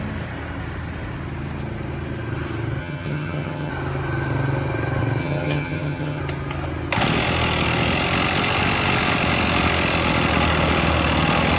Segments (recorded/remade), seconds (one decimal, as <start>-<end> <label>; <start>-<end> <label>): 0.0-2.8 recorded; 2.8-3.7 remade; 3.7-5.2 recorded; 5.2-6.2 remade; 6.2-11.6 recorded